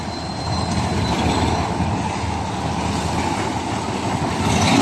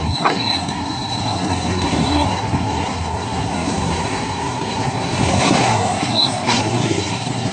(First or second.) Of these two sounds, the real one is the first